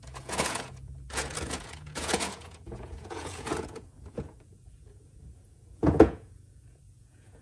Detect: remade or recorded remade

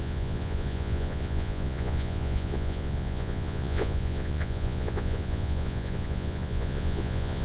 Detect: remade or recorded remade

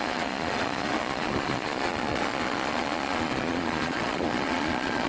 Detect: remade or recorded remade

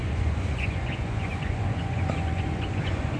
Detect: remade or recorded remade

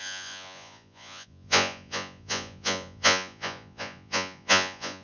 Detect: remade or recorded remade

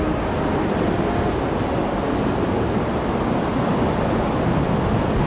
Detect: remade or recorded recorded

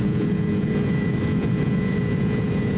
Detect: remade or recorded remade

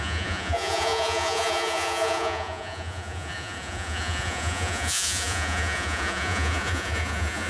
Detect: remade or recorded remade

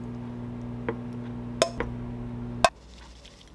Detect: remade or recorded recorded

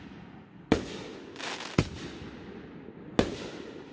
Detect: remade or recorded recorded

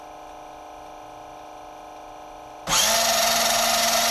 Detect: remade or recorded recorded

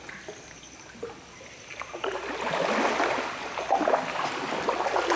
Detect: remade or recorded recorded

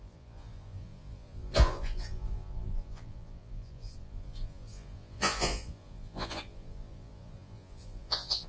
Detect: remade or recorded remade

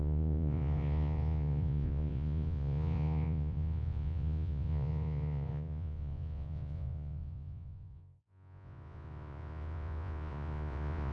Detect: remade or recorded remade